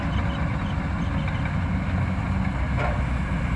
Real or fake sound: real